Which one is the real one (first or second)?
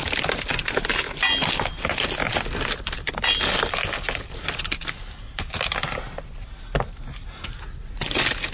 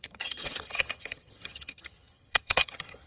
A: first